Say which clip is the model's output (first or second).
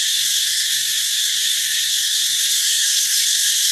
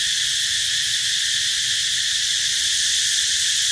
first